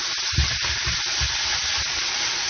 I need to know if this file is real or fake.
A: real